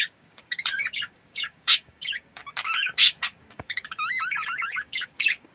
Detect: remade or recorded remade